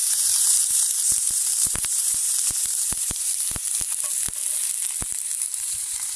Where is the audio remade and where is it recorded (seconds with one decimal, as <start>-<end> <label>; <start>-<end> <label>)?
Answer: 0.0-3.7 remade; 3.7-5.5 recorded; 5.5-6.2 remade